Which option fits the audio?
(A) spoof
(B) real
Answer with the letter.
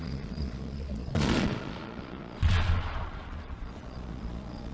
A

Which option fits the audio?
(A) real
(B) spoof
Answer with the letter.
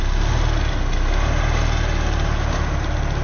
A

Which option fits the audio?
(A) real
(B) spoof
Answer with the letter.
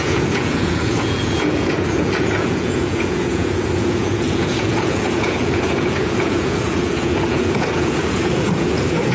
B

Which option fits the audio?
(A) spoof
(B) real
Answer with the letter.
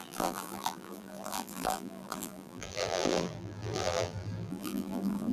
A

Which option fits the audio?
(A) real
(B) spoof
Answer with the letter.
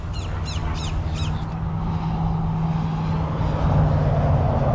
A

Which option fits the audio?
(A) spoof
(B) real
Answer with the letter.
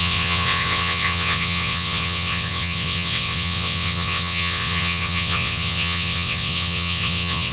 A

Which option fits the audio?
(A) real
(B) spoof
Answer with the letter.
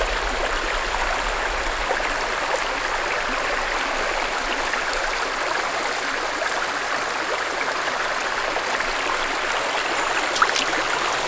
A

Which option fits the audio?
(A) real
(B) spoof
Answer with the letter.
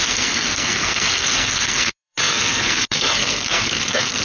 B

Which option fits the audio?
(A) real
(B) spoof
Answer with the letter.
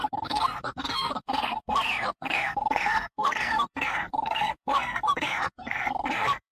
B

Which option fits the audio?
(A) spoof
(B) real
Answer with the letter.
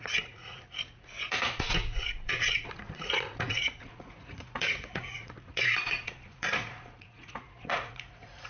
A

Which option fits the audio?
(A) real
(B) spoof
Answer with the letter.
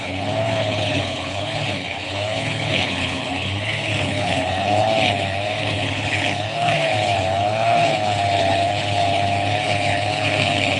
B